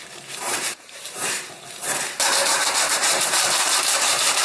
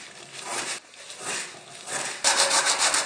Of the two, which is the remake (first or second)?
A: first